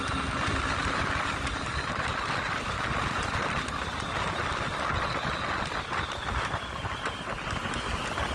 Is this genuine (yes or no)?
yes